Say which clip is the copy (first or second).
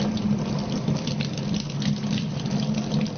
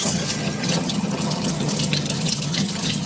second